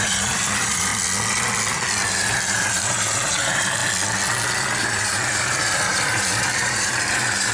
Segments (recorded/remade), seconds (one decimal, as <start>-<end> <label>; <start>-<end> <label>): 0.0-0.9 remade; 0.9-2.1 recorded; 2.1-3.8 remade; 3.8-4.8 recorded; 4.8-7.5 remade